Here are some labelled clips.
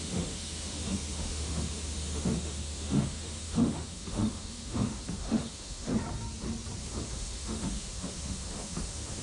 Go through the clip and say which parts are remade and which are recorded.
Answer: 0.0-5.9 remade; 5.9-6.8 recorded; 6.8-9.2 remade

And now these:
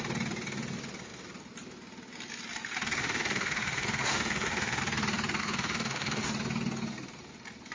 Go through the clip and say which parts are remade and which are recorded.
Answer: 0.0-3.0 recorded; 3.0-4.8 remade; 4.8-5.4 recorded; 5.4-6.2 remade; 6.2-7.7 recorded